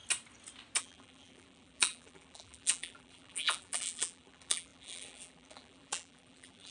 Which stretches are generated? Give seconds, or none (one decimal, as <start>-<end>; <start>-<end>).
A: 0.8-6.7